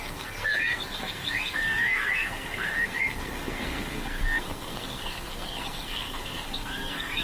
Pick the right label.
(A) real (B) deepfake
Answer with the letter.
B